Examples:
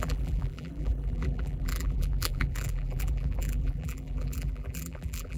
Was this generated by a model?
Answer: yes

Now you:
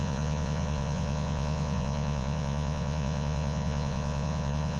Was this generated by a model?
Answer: yes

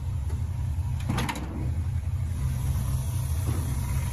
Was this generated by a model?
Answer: no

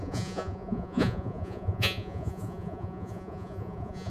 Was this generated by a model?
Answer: yes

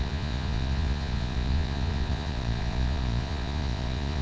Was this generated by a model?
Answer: yes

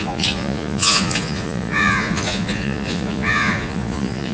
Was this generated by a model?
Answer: yes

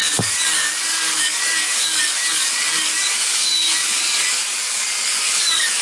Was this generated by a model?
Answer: yes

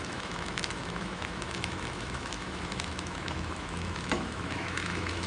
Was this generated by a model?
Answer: yes